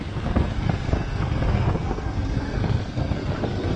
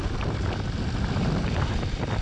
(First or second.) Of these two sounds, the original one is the second